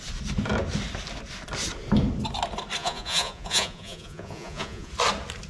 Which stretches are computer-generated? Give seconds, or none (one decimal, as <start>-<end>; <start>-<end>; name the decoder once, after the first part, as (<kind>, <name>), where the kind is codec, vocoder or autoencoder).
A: 2.8-4.9 (vocoder, Vocos)